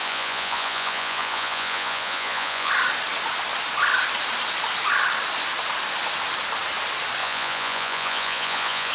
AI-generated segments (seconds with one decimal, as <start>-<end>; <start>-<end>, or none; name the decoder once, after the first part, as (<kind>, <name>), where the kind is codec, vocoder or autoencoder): 0.0-2.7 (vocoder, Vocos); 7.2-8.9